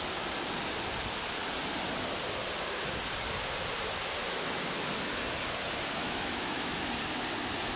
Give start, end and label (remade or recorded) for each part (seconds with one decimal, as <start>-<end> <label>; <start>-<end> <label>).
0.0-4.2 recorded; 4.2-4.8 remade; 4.8-6.0 recorded; 6.0-6.9 remade; 6.9-7.8 recorded